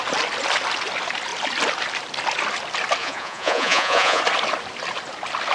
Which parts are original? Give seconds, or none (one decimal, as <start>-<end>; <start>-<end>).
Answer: 0.0-3.0; 4.2-5.5